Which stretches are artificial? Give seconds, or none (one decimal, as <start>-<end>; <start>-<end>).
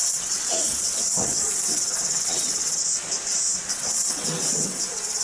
0.0-2.8; 3.7-5.2